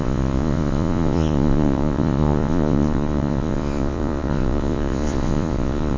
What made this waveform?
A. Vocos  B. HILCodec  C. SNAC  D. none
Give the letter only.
A